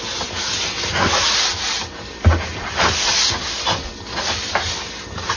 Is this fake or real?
real